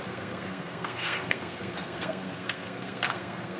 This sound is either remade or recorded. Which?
remade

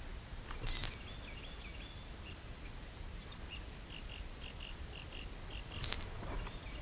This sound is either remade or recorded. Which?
recorded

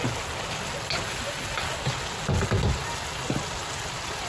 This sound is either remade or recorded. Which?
recorded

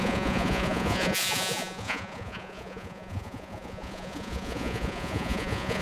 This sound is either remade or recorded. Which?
remade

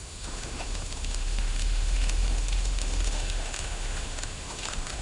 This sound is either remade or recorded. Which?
remade